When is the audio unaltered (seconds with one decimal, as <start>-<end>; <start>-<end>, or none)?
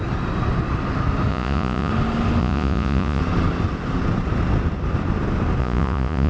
0.0-1.3; 1.9-2.4; 3.2-5.6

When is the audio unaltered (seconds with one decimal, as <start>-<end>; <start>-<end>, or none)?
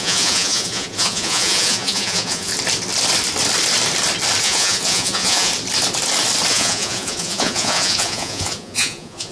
2.5-4.4; 5.5-6.5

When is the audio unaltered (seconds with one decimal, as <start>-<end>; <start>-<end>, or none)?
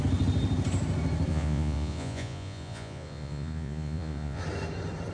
0.0-1.3; 4.4-5.1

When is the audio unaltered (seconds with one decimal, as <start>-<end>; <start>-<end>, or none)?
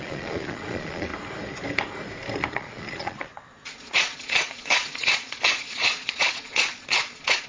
1.1-2.5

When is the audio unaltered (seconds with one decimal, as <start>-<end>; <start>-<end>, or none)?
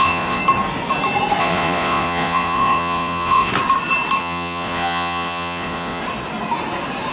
0.4-1.4; 3.5-4.2; 6.0-7.1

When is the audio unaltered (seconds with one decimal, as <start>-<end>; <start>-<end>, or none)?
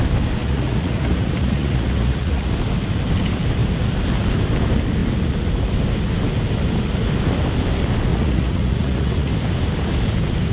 0.0-0.4; 2.5-8.1; 9.3-10.5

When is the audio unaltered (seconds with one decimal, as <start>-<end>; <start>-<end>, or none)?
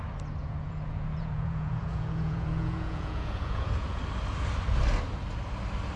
0.0-0.4; 4.0-6.0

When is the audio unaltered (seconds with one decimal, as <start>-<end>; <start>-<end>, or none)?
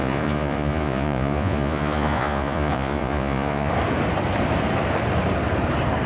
3.7-6.1